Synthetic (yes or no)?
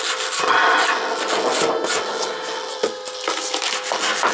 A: no